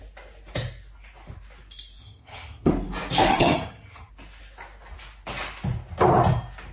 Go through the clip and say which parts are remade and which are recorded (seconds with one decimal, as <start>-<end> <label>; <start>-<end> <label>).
0.0-2.0 recorded; 2.0-2.7 remade; 2.7-3.3 recorded; 3.3-4.1 remade; 4.1-6.7 recorded